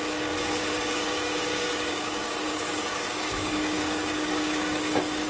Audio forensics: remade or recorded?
remade